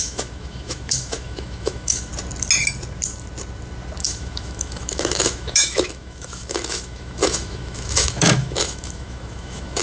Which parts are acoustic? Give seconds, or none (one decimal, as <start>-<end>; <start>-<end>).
2.1-4.0